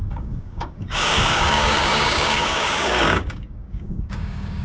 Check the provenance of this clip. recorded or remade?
remade